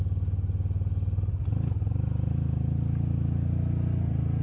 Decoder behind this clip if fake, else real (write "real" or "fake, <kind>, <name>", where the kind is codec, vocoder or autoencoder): real